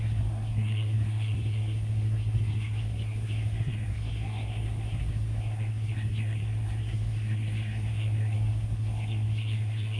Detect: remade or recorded remade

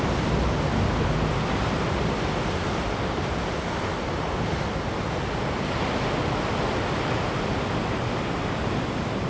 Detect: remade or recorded recorded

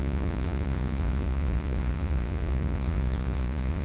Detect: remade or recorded remade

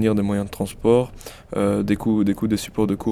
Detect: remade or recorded recorded